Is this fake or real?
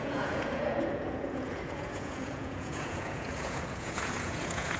fake